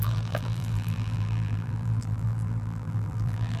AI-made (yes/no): yes